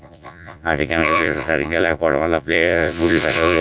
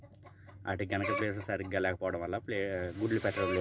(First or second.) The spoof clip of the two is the first